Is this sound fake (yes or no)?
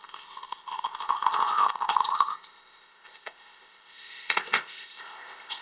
yes